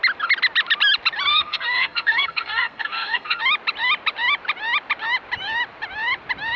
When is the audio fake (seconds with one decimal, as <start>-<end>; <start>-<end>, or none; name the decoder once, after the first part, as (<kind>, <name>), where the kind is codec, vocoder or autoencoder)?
1.3-3.4 (codec, SNAC)